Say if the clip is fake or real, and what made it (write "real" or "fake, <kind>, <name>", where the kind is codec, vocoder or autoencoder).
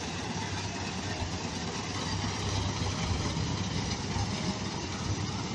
real